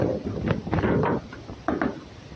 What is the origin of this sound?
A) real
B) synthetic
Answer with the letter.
A